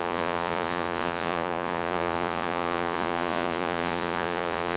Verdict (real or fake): fake